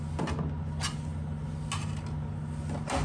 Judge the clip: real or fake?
real